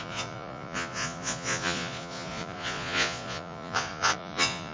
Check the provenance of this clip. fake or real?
fake